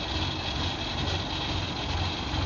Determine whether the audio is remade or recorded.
recorded